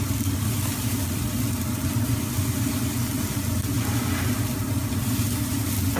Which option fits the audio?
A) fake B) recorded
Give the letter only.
B